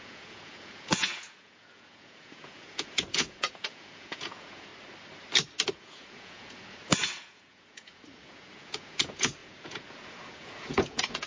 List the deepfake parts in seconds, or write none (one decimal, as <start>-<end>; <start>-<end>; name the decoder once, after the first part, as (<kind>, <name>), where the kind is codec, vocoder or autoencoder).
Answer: 0.0-4.7 (vocoder, Vocos); 5.7-11.3